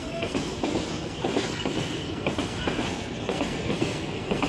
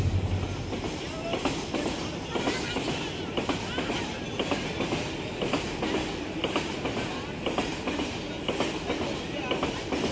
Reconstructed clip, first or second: first